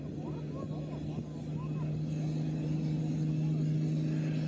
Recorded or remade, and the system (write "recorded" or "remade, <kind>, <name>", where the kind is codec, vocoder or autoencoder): recorded